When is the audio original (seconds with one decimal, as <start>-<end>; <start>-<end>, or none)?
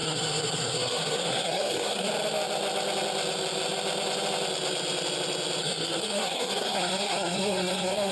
2.1-5.6